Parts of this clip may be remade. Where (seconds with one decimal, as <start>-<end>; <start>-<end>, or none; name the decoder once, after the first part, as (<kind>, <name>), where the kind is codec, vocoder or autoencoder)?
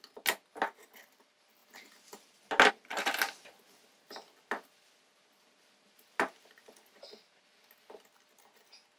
none